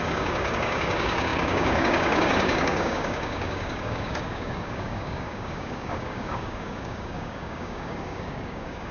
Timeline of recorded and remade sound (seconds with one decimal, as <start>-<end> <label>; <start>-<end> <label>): 0.0-8.9 remade